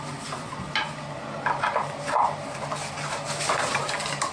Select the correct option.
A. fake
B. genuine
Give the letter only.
B